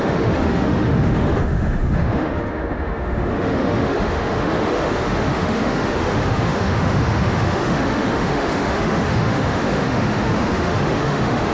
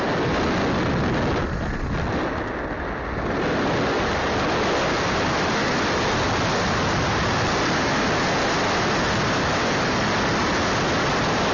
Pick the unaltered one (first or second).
second